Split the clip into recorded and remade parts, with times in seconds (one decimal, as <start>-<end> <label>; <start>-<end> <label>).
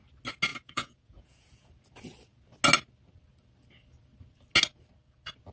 0.0-0.5 recorded; 0.5-1.7 remade; 1.7-5.5 recorded